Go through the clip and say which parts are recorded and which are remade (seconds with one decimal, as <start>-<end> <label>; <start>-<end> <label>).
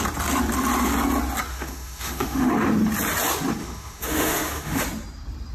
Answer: 0.0-1.5 recorded; 1.5-2.5 remade; 2.5-3.6 recorded; 3.6-4.8 remade; 4.8-5.5 recorded